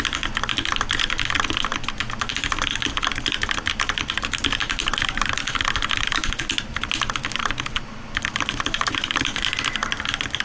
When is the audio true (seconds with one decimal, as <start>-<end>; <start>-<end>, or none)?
0.0-4.6; 9.4-10.4